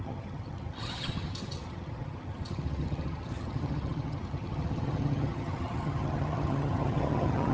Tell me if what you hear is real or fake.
fake